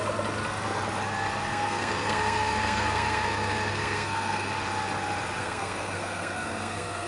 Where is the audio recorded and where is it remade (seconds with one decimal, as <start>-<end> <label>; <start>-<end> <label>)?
0.0-1.4 recorded; 1.4-4.5 remade; 4.5-5.4 recorded; 5.4-7.1 remade